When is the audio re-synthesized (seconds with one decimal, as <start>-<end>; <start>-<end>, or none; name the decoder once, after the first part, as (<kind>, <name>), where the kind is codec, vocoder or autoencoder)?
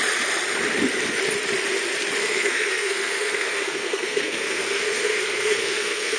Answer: 2.2-6.2 (codec, SNAC)